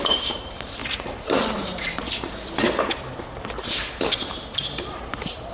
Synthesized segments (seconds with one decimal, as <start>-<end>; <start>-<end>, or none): 0.0-0.8; 4.1-5.5